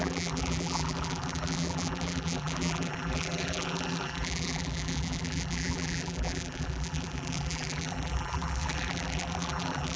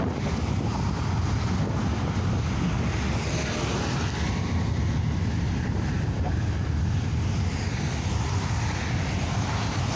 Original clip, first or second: second